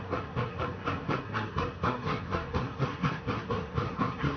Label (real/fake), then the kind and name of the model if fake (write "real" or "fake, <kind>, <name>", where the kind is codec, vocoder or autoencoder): fake, codec, SNAC